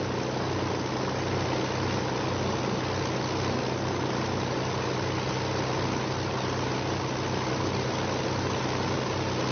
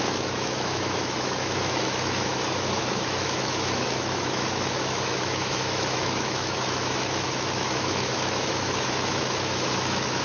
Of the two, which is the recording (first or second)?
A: first